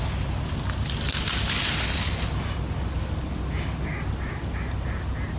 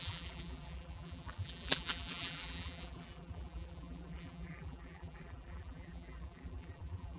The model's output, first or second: second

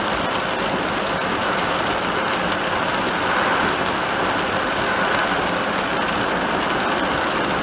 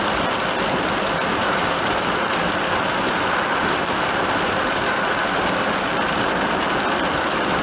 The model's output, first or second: second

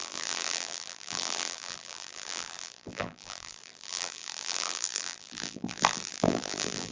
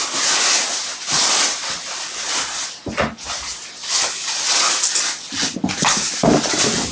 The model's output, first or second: first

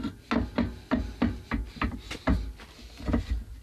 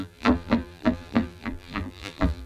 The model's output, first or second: second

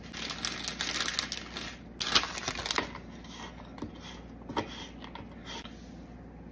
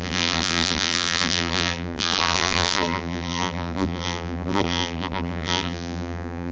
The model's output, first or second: second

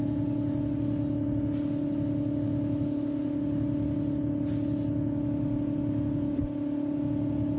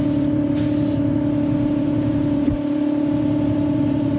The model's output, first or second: second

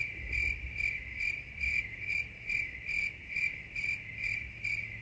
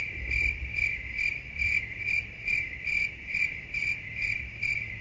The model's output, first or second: second